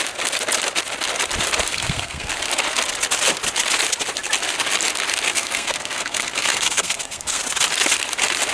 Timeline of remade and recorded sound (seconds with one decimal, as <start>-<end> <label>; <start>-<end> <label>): 0.0-1.7 recorded; 1.7-2.3 remade; 2.3-5.3 recorded; 5.3-7.4 remade; 7.4-8.5 recorded